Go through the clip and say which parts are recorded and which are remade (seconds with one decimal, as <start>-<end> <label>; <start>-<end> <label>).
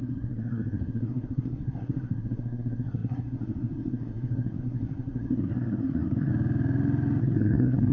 0.0-6.3 remade; 6.3-7.2 recorded; 7.2-7.9 remade